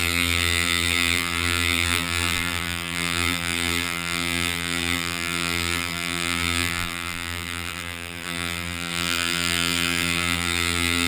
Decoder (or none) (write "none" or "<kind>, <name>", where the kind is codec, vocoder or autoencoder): vocoder, BigVGAN v2